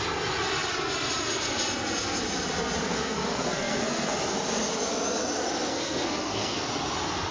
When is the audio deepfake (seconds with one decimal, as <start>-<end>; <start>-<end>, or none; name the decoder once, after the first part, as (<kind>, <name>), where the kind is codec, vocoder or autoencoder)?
2.9-4.1 (codec, SNAC); 5.7-6.7